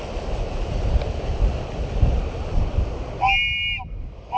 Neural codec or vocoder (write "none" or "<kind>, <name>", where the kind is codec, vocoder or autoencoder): none